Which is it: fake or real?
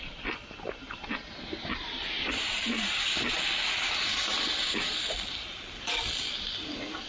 real